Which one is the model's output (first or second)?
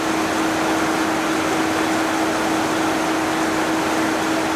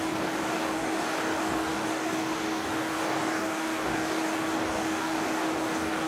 second